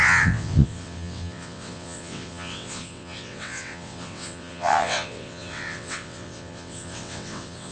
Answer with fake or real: fake